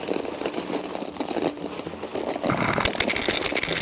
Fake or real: real